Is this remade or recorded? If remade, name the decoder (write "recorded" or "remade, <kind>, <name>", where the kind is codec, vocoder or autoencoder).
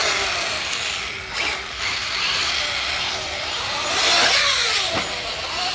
recorded